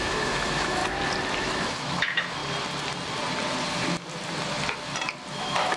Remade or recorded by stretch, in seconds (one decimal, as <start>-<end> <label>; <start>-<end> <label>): 0.0-0.8 remade; 0.8-1.4 recorded; 1.4-2.4 remade; 2.4-5.3 recorded; 5.3-5.8 remade